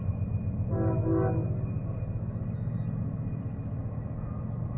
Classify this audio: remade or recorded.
recorded